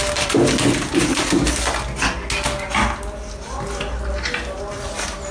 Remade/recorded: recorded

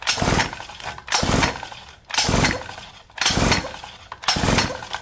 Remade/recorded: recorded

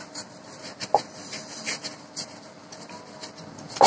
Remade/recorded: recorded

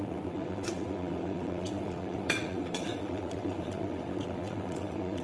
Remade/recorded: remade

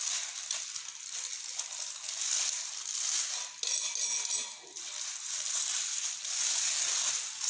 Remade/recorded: recorded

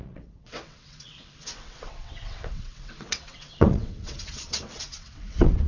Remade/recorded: remade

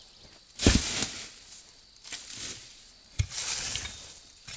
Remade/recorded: recorded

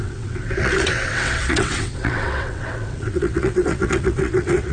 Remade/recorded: remade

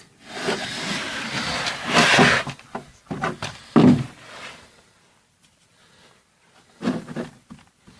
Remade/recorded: recorded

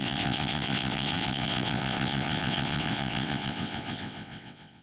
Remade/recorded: remade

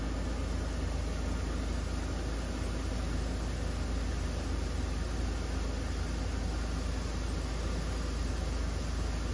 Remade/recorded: recorded